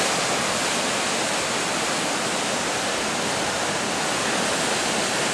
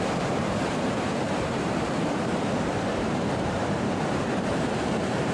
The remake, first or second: second